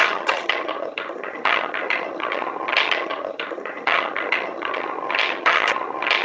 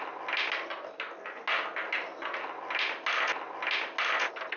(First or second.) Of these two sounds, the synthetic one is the first